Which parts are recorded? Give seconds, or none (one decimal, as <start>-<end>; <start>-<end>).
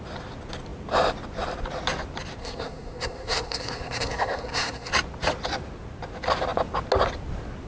0.0-2.4; 4.9-7.7